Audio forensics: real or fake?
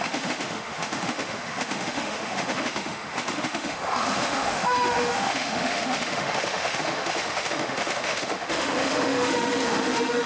fake